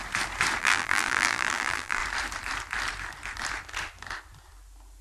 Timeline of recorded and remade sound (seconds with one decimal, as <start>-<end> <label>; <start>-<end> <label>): 0.0-0.6 recorded; 0.6-2.0 remade; 2.0-5.0 recorded